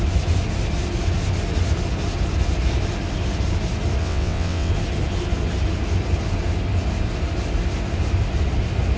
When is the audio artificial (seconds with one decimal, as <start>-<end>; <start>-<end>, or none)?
4.0-4.7